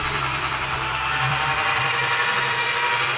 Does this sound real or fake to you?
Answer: fake